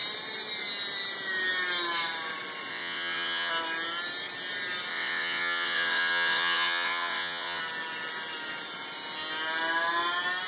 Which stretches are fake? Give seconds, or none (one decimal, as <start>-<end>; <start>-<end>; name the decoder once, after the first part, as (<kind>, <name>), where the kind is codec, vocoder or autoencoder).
2.7-3.5 (vocoder, WaveNeXt); 4.9-7.6